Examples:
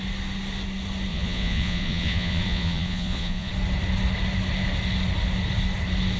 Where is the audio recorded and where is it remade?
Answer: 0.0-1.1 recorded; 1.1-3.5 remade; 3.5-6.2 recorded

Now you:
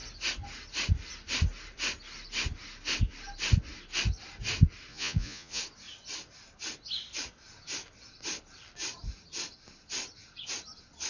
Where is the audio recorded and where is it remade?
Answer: 0.0-4.9 recorded; 4.9-5.6 remade; 5.6-11.1 recorded

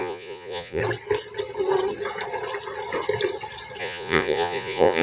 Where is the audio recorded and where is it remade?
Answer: 0.0-0.8 remade; 0.8-3.8 recorded; 3.8-5.0 remade